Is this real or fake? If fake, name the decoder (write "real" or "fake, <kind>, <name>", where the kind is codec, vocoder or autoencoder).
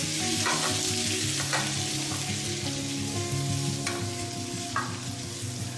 real